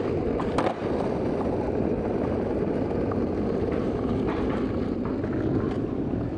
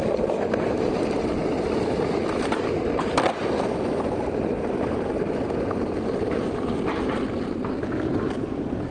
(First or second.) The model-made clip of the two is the second